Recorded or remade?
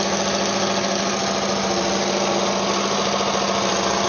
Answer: recorded